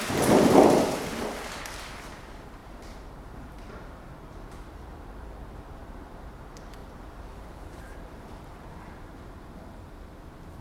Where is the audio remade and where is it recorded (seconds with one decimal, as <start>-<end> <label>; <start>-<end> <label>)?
0.0-2.6 recorded; 2.6-6.2 remade; 6.2-6.8 recorded; 6.8-9.8 remade; 9.8-10.6 recorded